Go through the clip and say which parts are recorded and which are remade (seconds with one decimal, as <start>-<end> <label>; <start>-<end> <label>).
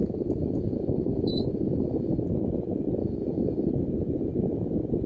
0.0-2.2 remade; 2.2-3.0 recorded; 3.0-3.7 remade; 3.7-5.1 recorded